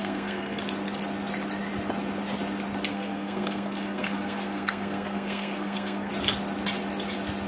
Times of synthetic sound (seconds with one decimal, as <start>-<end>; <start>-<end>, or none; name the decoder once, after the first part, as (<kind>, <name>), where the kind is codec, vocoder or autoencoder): 0.0-0.6 (codec, SNAC); 2.9-6.1